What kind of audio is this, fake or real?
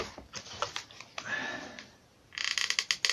real